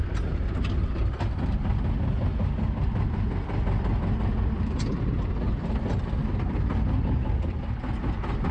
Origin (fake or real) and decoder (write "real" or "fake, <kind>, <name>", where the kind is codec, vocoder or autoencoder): real